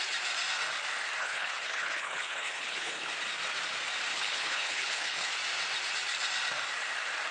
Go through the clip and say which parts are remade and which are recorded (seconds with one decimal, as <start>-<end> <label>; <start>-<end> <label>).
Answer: 0.0-1.2 recorded; 1.2-3.1 remade; 3.1-4.1 recorded; 4.1-5.3 remade; 5.3-7.3 recorded